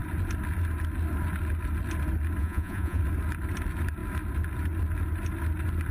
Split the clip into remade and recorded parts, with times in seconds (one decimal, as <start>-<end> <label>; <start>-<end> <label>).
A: 0.0-2.4 recorded; 2.4-3.0 remade; 3.0-5.9 recorded